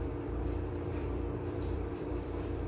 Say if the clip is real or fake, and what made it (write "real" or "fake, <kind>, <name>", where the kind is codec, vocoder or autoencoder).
fake, vocoder, BigVGAN v2